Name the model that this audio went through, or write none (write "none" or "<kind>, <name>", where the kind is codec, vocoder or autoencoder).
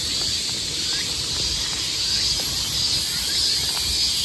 none